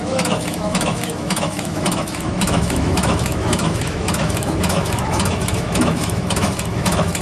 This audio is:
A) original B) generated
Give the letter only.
B